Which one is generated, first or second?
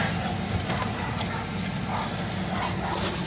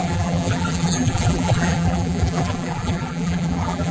second